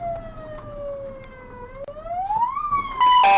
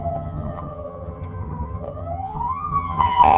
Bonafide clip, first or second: first